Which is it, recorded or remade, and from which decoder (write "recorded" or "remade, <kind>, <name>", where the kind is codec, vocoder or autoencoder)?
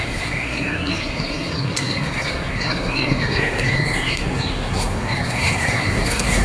remade, codec, SNAC